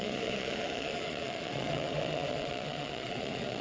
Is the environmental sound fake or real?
fake